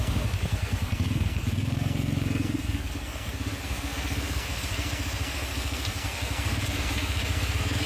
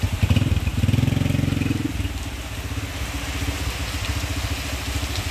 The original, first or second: second